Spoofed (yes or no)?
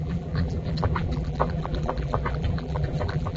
yes